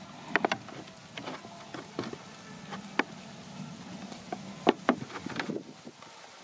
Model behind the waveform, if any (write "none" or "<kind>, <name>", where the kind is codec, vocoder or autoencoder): none